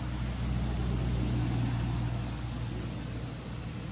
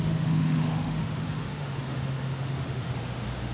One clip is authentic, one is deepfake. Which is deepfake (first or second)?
second